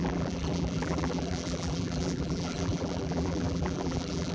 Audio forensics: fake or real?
fake